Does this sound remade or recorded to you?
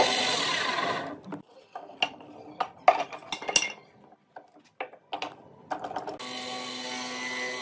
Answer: recorded